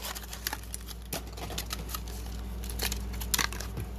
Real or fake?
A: real